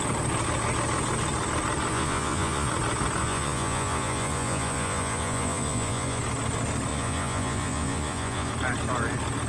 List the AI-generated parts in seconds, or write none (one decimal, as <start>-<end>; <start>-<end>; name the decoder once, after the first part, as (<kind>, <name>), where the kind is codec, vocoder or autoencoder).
1.9-2.7 (vocoder, Vocos); 3.2-6.2; 6.9-8.5

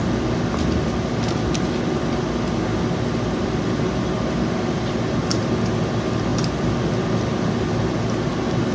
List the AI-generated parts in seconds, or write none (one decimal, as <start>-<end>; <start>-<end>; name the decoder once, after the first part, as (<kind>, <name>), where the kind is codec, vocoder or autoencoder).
none

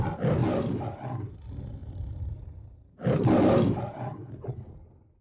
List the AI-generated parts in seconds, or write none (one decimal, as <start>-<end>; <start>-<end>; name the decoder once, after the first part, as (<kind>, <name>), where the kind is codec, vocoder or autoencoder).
1.8-4.5 (vocoder, BigVGAN v2)

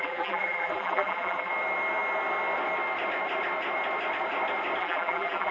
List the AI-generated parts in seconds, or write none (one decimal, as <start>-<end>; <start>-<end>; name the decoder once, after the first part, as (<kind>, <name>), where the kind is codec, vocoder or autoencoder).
0.0-1.5 (vocoder, BigVGAN v2); 4.8-5.5